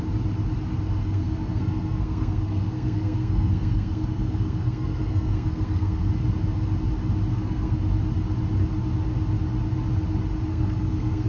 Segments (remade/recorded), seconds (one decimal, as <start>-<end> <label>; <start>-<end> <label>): 0.0-1.0 recorded; 1.0-6.1 remade; 6.1-7.3 recorded; 7.3-7.8 remade; 7.8-10.5 recorded; 10.5-11.3 remade